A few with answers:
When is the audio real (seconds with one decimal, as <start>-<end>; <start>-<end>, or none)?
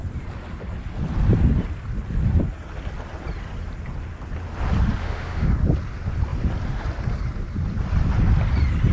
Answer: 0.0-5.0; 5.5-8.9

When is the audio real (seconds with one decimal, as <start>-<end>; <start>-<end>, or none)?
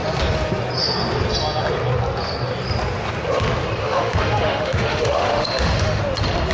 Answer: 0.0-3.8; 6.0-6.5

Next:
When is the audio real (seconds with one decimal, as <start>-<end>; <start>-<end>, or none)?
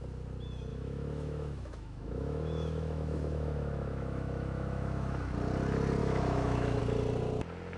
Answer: 0.0-0.7; 5.3-6.0; 6.8-7.8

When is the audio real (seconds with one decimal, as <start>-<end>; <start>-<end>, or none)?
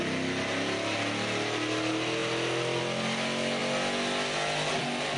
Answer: 0.0-5.2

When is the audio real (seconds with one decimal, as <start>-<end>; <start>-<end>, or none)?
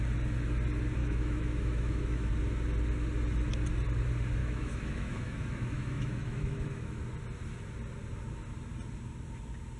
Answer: 0.0-1.0; 2.3-4.4; 7.0-9.8